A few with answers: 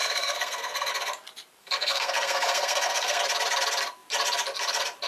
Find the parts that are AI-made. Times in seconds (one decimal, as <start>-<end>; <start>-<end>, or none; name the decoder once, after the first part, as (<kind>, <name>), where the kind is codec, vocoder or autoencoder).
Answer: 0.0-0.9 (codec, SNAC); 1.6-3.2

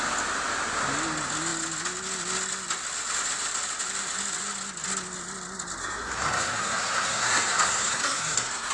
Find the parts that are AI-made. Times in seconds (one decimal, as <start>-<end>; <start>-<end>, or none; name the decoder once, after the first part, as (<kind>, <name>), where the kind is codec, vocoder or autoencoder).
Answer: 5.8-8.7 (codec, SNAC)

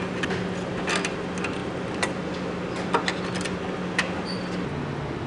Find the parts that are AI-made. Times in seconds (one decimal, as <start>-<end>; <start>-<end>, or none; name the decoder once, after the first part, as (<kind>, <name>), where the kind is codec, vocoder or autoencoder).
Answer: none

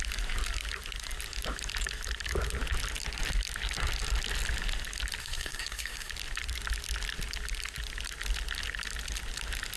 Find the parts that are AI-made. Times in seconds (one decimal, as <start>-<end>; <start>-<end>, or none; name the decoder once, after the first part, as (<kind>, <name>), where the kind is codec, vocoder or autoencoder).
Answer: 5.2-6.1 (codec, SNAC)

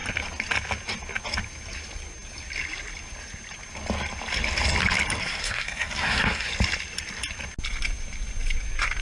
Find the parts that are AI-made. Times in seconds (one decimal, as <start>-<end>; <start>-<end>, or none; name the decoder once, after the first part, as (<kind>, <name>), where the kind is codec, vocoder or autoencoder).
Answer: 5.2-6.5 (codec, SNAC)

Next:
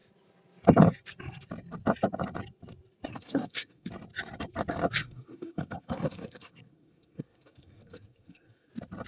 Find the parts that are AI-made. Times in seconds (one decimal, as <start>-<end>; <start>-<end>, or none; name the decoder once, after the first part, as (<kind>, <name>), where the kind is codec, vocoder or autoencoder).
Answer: 3.1-3.9 (codec, SNAC); 5.0-8.7